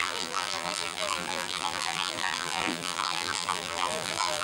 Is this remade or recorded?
remade